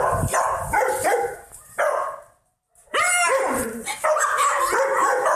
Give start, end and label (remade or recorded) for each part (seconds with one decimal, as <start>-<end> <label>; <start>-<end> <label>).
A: 0.0-1.3 recorded; 1.3-2.2 remade; 2.2-2.8 recorded; 2.8-3.7 remade; 3.7-5.4 recorded